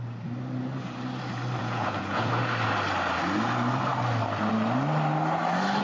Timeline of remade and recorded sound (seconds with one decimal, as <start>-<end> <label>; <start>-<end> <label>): 0.0-1.6 recorded; 1.6-2.3 remade; 2.3-5.8 recorded